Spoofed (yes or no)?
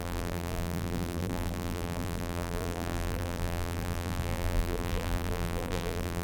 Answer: yes